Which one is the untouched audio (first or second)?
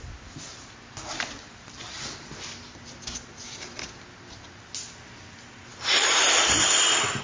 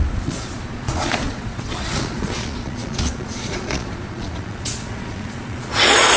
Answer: first